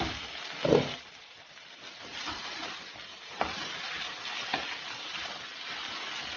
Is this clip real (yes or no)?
yes